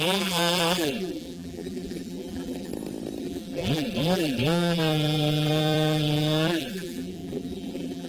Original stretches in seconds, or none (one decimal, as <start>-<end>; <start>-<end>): 2.7-3.2